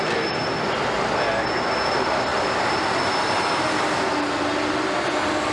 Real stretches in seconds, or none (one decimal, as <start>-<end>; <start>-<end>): 0.0-5.5